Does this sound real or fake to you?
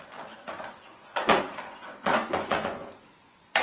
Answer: fake